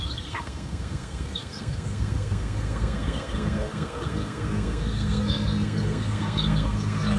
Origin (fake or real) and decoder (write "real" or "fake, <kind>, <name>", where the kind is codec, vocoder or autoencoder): fake, codec, SNAC